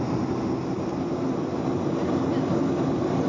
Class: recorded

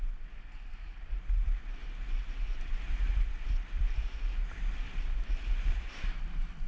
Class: recorded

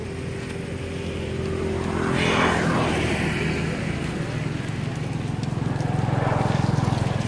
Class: recorded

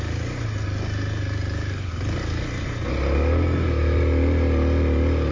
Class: recorded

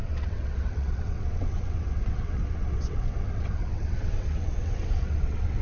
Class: remade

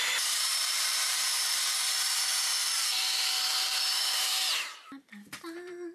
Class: remade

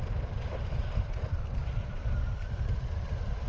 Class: recorded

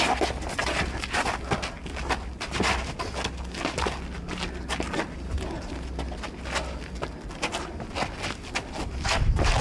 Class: recorded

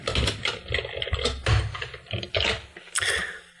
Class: recorded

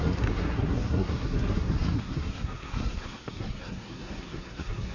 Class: remade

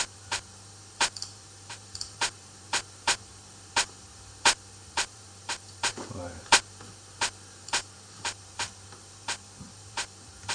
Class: remade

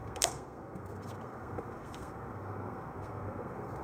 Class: remade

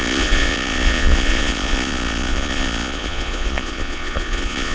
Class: remade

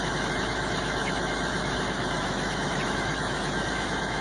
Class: remade